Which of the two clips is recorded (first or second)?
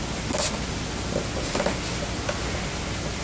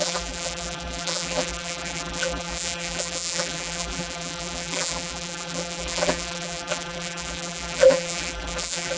first